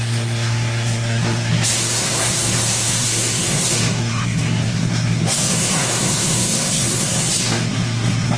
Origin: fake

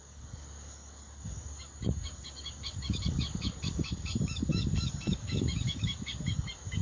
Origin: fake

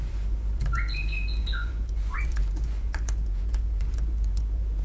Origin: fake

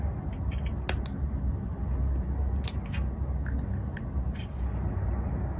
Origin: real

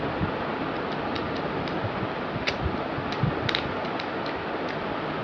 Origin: real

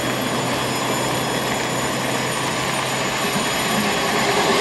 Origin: real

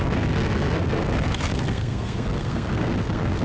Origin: fake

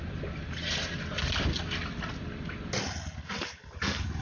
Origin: real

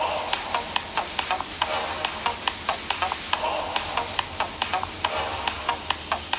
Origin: real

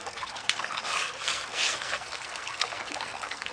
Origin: fake